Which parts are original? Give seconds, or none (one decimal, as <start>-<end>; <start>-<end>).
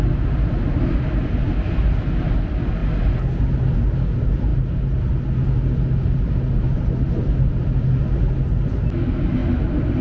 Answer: 0.0-10.0